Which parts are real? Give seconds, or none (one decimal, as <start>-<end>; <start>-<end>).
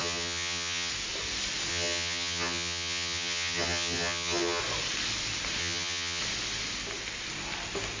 0.9-1.7; 4.6-5.6; 6.2-8.0